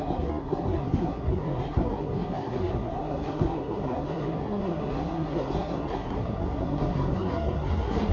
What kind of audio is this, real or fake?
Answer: fake